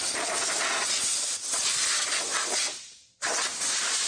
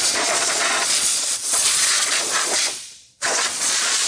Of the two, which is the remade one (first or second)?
second